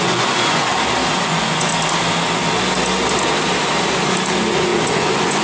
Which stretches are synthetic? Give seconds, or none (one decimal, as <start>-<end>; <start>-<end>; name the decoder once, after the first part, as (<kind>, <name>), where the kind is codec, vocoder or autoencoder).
0.0-0.7 (vocoder, Vocos); 1.2-1.7; 4.3-5.4